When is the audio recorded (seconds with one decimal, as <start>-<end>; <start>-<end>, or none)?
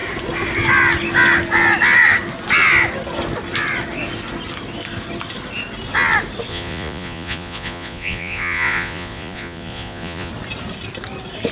0.0-6.5; 10.3-11.5